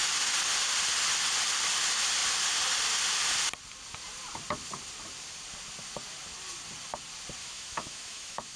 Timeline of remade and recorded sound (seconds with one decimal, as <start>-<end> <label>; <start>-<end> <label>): 0.0-7.4 recorded; 7.4-8.6 remade